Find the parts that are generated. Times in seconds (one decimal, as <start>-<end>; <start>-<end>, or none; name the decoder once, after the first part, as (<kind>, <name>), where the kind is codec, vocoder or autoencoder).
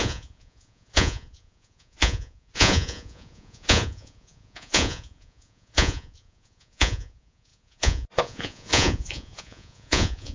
0.0-10.3 (vocoder, Vocos)